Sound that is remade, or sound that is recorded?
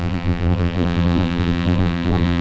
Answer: remade